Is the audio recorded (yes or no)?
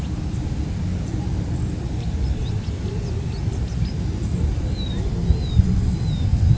yes